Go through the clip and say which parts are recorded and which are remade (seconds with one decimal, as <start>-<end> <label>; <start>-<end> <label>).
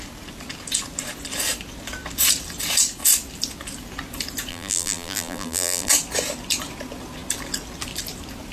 0.0-4.5 recorded; 4.5-5.9 remade; 5.9-8.5 recorded